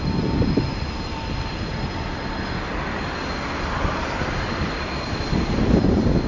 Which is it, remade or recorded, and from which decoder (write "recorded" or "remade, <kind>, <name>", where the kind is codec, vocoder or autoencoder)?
recorded